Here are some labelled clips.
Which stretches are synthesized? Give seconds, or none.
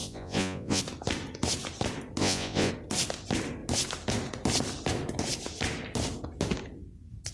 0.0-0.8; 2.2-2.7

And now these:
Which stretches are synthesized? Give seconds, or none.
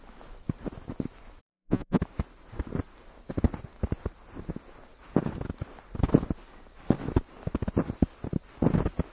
1.4-2.0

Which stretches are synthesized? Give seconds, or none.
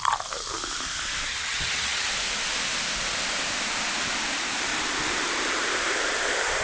1.3-2.1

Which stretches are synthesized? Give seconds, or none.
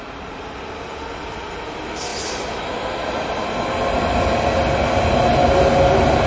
none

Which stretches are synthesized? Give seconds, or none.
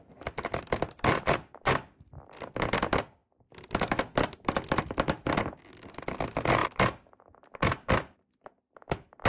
none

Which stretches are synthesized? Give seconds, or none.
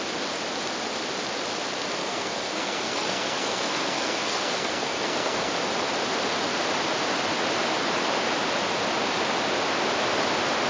2.0-5.5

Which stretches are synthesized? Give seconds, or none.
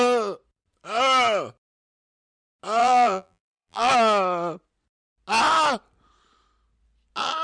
2.8-3.9